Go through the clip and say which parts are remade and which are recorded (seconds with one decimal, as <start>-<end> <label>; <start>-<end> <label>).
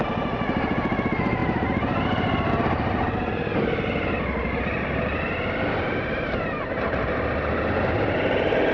0.0-8.7 recorded